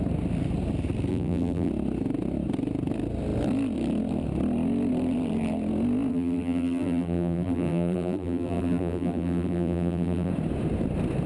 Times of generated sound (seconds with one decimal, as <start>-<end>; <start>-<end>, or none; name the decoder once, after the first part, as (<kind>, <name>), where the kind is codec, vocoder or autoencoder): 1.1-1.7 (vocoder, BigVGAN v2); 6.1-10.3